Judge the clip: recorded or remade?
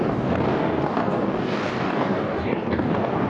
remade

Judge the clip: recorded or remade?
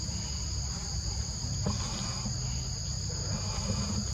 recorded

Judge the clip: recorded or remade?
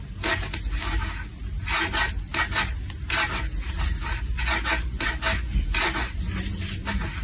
recorded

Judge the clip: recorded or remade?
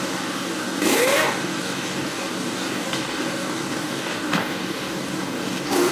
remade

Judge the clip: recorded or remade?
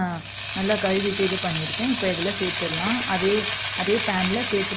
recorded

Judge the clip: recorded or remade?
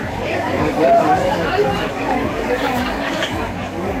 remade